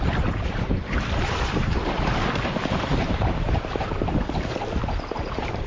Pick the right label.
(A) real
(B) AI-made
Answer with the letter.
B